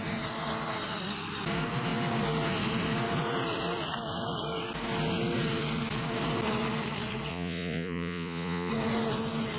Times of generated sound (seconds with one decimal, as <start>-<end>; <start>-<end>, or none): 7.3-8.7